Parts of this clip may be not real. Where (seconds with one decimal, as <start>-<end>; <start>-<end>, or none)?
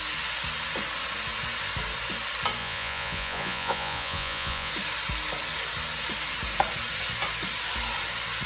2.6-4.7